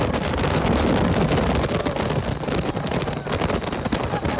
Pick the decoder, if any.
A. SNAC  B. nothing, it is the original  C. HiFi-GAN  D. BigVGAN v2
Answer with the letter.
B